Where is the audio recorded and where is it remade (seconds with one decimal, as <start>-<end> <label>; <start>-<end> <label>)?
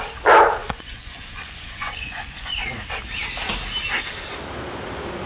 0.0-0.6 recorded; 0.6-2.6 remade; 2.6-5.2 recorded